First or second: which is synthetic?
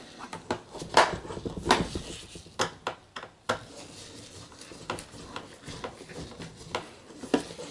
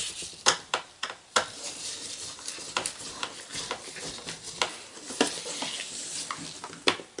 second